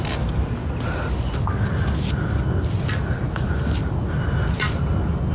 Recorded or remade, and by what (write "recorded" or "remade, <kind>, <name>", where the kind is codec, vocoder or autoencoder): recorded